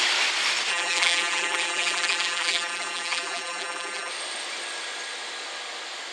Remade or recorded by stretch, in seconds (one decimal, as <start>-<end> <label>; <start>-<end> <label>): 0.0-0.7 recorded; 0.7-4.1 remade; 4.1-6.1 recorded